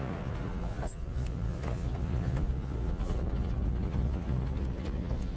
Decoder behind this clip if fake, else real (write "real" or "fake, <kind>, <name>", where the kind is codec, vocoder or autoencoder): fake, vocoder, Vocos